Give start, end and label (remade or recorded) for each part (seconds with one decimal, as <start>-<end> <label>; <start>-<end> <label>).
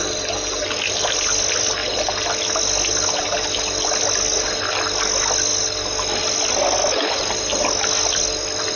0.0-8.8 recorded